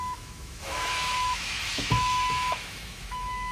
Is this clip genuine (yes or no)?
no